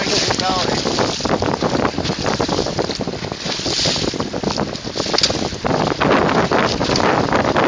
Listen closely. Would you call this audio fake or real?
real